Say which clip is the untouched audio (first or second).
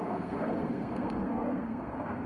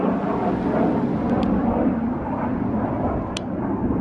second